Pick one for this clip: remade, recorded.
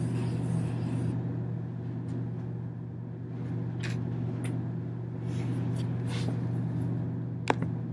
recorded